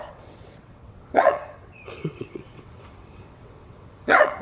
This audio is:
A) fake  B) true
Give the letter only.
A